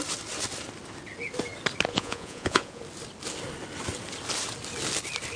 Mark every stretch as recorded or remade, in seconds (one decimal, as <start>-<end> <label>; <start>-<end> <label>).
0.0-1.9 recorded; 1.9-2.8 remade; 2.8-5.4 recorded